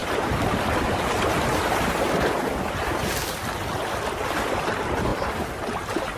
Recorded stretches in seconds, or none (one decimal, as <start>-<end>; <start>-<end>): 5.1-5.7